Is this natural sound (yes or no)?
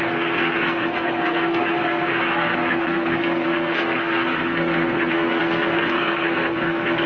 no